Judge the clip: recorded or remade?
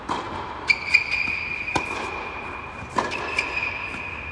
recorded